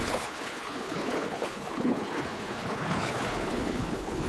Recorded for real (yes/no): no